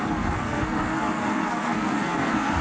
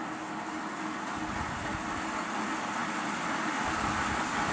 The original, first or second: second